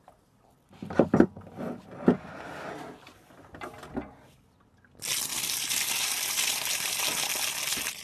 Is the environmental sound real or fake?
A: real